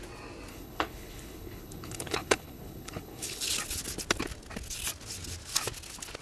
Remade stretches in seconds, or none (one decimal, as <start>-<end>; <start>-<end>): 0.5-3.4